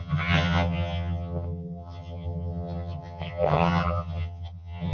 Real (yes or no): no